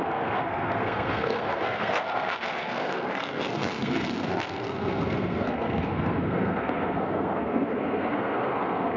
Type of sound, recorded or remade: remade